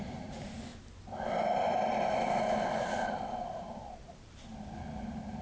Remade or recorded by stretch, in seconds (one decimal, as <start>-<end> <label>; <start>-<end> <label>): 0.0-0.7 remade; 0.7-3.5 recorded; 3.5-4.5 remade; 4.5-5.4 recorded